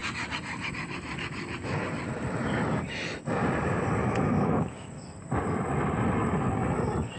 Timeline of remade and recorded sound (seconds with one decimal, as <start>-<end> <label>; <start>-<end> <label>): 0.0-4.0 recorded; 4.0-4.9 remade; 4.9-7.2 recorded